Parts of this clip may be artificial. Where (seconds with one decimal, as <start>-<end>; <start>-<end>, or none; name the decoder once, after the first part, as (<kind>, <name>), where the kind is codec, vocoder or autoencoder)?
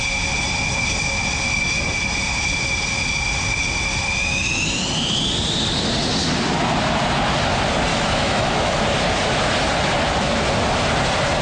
7.9-8.8 (autoencoder, DAC-VAE)